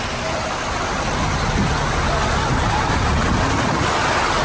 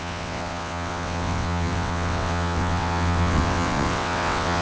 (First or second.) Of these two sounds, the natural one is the first